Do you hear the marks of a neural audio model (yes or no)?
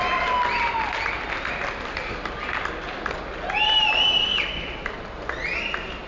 no